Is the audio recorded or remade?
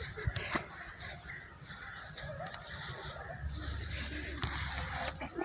remade